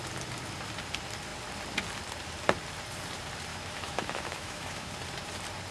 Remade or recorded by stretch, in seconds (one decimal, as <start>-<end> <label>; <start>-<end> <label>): 0.0-3.5 recorded; 3.5-4.9 remade; 4.9-5.7 recorded

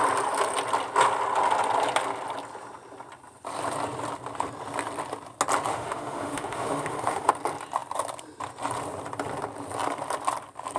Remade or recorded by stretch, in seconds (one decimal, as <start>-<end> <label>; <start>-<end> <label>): 0.0-5.7 recorded; 5.7-7.3 remade; 7.3-10.8 recorded